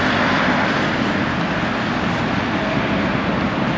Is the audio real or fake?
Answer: real